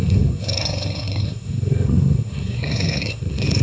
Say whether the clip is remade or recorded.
remade